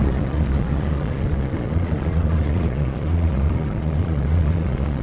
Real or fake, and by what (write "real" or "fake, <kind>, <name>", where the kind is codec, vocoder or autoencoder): fake, vocoder, Vocos